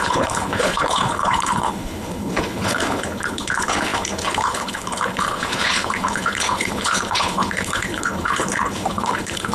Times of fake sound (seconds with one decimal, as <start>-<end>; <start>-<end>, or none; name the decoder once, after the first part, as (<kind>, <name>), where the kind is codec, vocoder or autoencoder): 0.0-9.5 (codec, HILCodec)